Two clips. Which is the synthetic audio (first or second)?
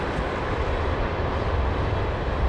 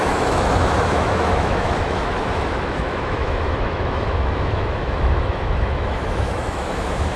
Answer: second